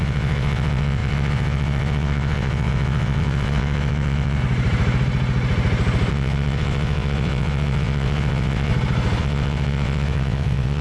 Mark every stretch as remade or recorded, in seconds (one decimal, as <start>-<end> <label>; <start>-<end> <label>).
0.0-4.4 remade; 4.4-6.1 recorded; 6.1-8.7 remade; 8.7-9.2 recorded; 9.2-10.8 remade